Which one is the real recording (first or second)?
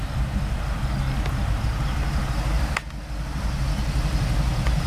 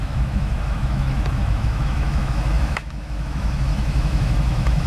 first